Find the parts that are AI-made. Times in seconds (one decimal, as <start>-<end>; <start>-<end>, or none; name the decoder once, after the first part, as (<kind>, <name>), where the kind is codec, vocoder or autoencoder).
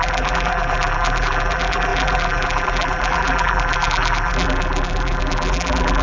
0.0-6.0 (vocoder, BigVGAN v2)